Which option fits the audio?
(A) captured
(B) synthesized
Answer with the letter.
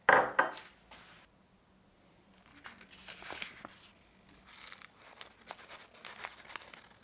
A